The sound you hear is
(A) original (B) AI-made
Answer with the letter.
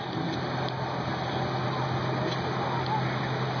A